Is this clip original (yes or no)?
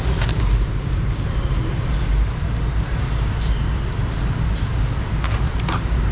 no